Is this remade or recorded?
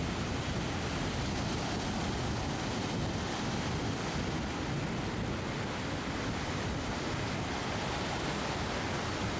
recorded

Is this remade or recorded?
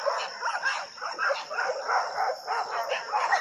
recorded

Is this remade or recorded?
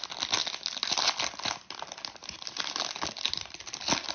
recorded